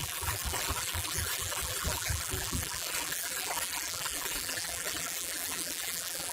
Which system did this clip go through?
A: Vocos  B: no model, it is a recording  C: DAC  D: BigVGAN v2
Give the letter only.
D